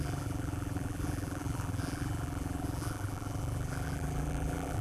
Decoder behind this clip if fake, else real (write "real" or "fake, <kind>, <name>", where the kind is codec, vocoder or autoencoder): fake, vocoder, BigVGAN v2